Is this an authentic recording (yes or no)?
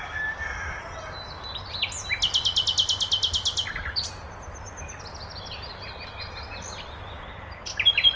yes